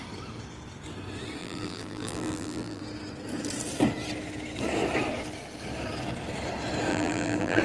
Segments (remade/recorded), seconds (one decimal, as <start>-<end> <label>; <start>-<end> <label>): 0.0-1.4 recorded; 1.4-2.8 remade; 2.8-6.9 recorded; 6.9-7.6 remade